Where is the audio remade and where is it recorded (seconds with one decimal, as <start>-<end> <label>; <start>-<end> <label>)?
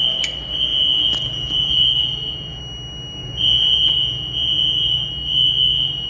0.0-0.7 recorded; 0.7-2.6 remade; 2.6-3.2 recorded; 3.2-5.1 remade; 5.1-6.1 recorded